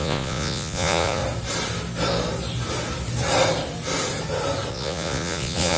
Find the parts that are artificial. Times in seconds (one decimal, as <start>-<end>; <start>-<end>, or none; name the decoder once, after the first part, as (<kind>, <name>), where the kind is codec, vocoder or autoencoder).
0.0-1.2 (vocoder, Vocos); 4.7-5.8